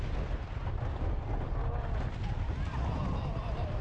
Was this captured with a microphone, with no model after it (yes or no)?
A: yes